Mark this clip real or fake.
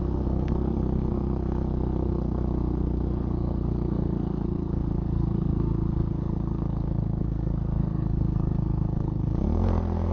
fake